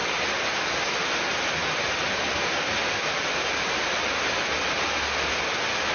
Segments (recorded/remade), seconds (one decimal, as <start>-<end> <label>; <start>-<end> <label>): 0.0-2.8 recorded; 2.8-3.7 remade; 3.7-5.9 recorded